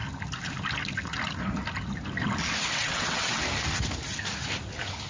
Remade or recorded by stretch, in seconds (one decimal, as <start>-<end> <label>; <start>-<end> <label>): 0.0-2.8 recorded; 2.8-3.4 remade; 3.4-5.1 recorded